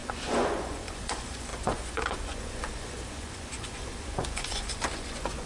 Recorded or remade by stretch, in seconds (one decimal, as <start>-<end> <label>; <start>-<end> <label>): 0.0-5.5 remade